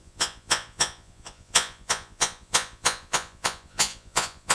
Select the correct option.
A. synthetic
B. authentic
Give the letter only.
A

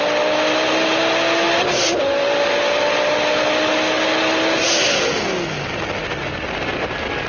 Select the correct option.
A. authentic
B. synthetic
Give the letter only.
A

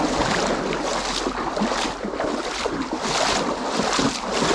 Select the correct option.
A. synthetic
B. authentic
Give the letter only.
B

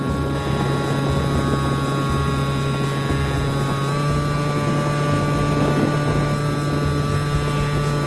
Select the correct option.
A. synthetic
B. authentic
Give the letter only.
B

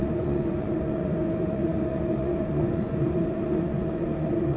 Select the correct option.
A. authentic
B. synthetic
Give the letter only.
B